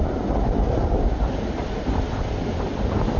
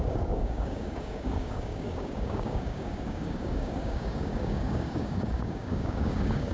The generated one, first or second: second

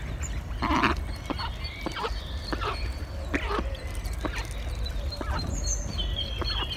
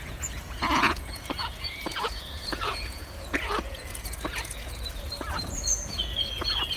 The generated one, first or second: second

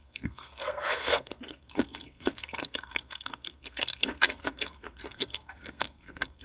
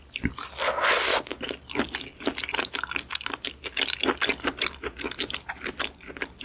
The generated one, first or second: first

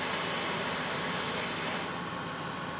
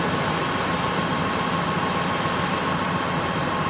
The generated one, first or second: second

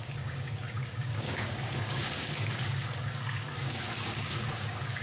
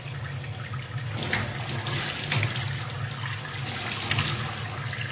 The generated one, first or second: first